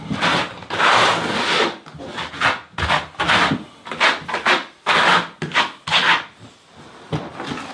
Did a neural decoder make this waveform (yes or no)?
no